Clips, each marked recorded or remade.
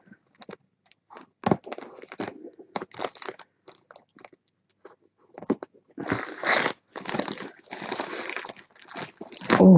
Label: recorded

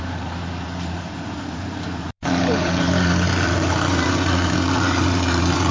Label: remade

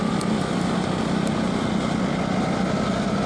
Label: recorded